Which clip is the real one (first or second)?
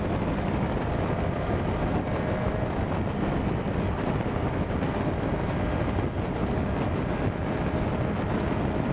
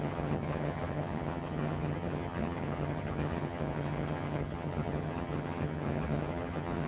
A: first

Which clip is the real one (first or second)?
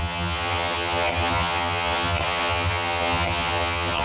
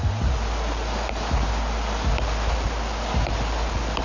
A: second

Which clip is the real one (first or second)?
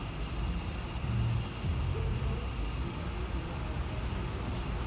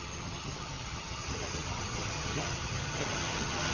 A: first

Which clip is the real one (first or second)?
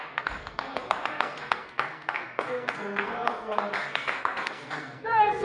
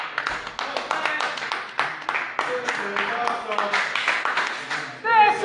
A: second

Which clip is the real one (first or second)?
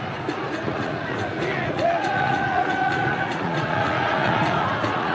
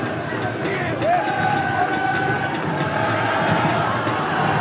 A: second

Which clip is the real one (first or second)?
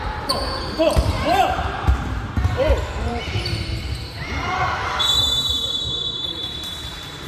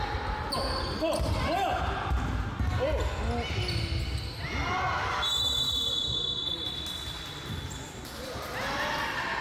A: second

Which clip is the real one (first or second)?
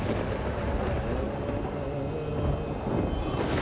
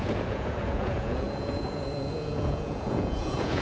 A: first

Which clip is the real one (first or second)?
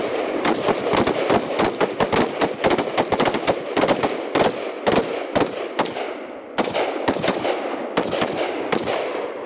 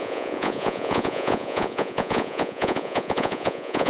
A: first